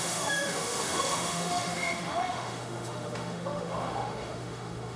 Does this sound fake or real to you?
fake